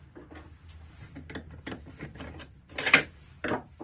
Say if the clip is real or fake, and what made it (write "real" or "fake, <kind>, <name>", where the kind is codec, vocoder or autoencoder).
real